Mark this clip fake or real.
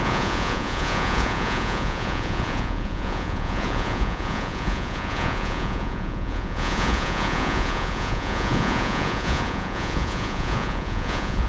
fake